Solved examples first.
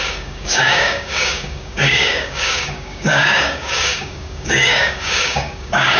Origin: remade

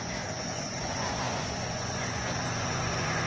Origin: remade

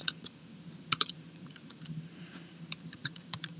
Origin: remade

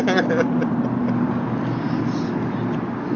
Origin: recorded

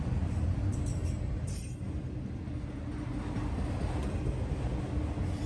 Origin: recorded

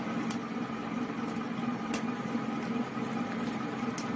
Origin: recorded